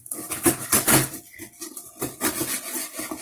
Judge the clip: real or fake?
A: real